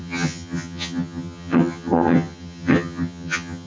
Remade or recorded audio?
remade